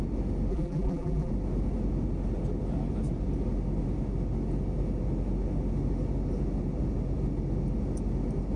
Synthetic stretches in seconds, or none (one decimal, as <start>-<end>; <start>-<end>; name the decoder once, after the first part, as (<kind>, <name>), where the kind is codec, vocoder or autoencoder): 0.5-1.3 (vocoder, BigVGAN v2)